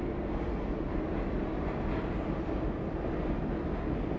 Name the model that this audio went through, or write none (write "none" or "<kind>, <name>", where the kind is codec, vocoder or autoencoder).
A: none